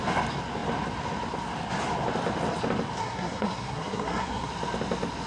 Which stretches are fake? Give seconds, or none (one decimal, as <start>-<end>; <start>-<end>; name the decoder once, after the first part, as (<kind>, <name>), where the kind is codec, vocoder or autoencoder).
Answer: 3.0-4.5 (codec, SNAC)